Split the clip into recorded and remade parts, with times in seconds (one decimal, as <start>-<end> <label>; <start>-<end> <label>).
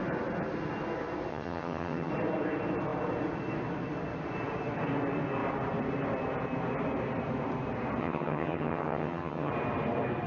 0.0-1.3 recorded; 1.3-2.1 remade; 2.1-8.0 recorded; 8.0-9.5 remade; 9.5-10.3 recorded